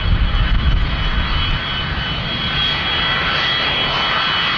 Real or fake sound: real